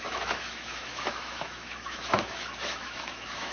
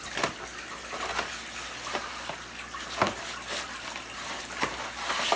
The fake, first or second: first